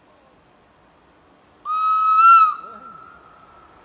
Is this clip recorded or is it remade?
recorded